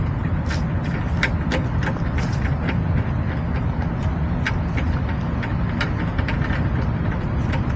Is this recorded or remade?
recorded